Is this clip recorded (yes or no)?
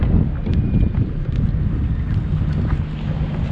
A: yes